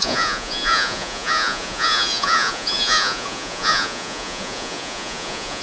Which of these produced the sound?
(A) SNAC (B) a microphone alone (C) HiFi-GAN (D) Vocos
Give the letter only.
D